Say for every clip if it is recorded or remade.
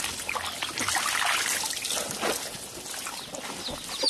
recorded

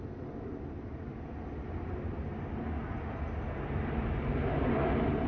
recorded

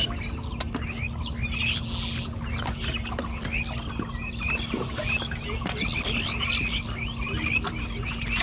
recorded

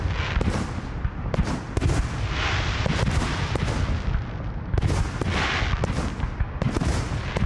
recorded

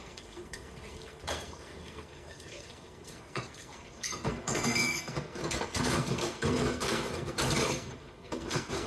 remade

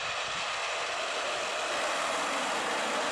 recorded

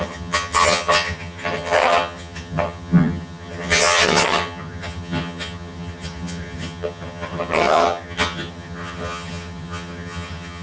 remade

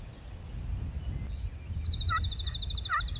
recorded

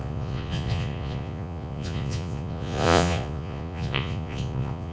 remade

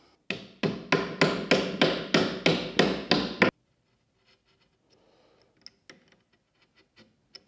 recorded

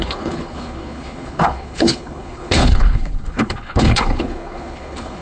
remade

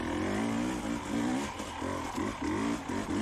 recorded